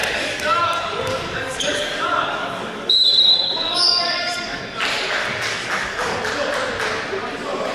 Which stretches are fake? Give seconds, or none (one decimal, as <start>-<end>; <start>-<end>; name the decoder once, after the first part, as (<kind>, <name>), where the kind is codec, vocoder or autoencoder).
0.0-4.6 (codec, DAC); 5.2-6.2